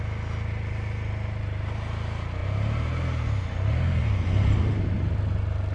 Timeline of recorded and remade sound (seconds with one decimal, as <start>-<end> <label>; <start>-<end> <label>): 0.0-5.7 recorded

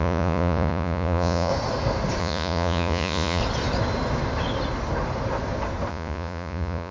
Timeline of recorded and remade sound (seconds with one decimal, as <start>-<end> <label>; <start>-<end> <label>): 0.0-1.5 remade; 1.5-2.2 recorded; 2.2-3.4 remade; 3.4-5.9 recorded; 5.9-6.9 remade

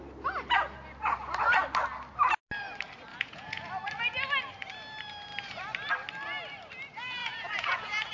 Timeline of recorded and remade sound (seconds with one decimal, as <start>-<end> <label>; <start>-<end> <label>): 0.0-3.1 recorded; 3.1-3.7 remade; 3.7-7.2 recorded; 7.2-8.1 remade

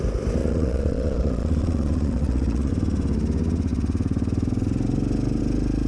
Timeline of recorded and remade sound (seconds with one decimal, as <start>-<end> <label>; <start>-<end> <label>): 0.0-0.4 recorded; 0.4-2.7 remade; 2.7-5.9 recorded

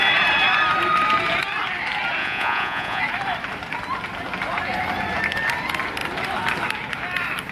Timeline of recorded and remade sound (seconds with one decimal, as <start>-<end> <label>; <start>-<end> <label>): 0.0-2.2 recorded; 2.2-3.0 remade; 3.0-7.5 recorded